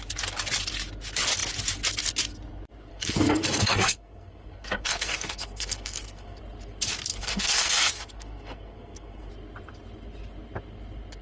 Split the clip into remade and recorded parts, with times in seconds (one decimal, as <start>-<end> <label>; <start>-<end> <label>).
0.0-2.9 recorded; 2.9-6.4 remade; 6.4-7.1 recorded; 7.1-9.3 remade; 9.3-11.2 recorded

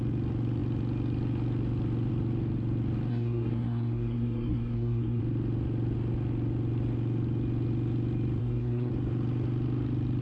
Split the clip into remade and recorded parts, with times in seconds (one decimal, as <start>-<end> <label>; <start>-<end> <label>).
0.0-3.1 recorded; 3.1-5.2 remade; 5.2-8.4 recorded; 8.4-8.9 remade; 8.9-10.2 recorded